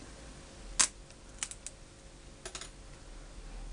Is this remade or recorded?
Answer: recorded